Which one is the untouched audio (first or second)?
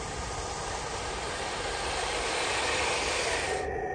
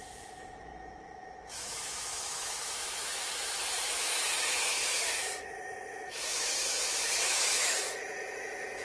first